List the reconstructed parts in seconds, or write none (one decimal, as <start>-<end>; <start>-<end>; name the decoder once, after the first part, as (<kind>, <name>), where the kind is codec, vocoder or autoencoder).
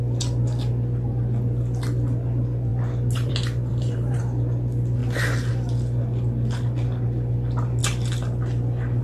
3.7-4.2 (vocoder, BigVGAN v2)